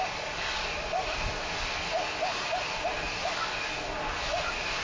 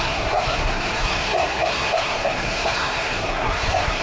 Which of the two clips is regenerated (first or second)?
second